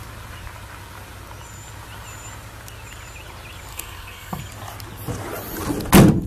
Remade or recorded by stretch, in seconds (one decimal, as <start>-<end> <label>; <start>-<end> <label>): 0.0-3.7 recorded; 3.7-4.4 remade; 4.4-6.3 recorded